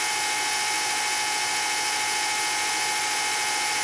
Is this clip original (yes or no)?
yes